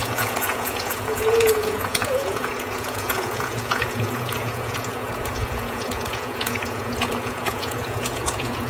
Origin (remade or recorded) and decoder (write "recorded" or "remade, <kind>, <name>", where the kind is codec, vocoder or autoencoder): remade, vocoder, Vocos